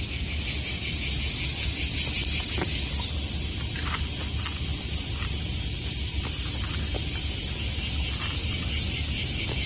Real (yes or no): yes